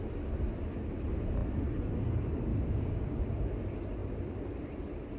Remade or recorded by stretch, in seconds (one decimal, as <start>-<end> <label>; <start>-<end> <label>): 0.0-2.5 recorded; 2.5-3.2 remade; 3.2-5.2 recorded